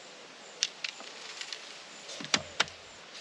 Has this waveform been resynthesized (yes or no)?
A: no